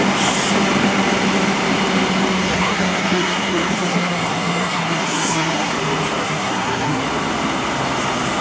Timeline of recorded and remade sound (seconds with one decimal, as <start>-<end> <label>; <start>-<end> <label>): 0.0-2.4 recorded; 2.4-5.7 remade; 5.7-6.2 recorded; 6.2-7.0 remade; 7.0-8.4 recorded